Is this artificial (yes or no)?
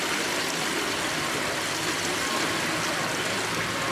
no